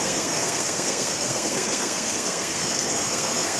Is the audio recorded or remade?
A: remade